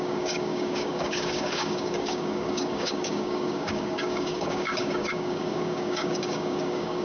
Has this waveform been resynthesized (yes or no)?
yes